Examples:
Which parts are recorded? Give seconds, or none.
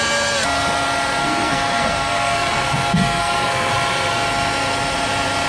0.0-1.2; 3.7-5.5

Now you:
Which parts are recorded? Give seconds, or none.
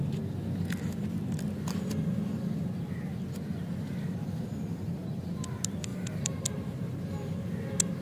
0.0-5.9; 6.5-8.0